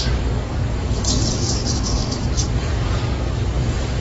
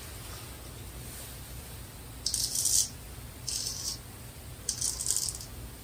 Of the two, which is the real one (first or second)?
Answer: second